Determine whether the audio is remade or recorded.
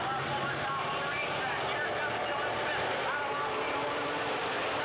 recorded